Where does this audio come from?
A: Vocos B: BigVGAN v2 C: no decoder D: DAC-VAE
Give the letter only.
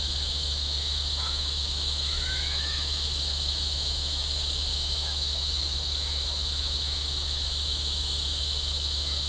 D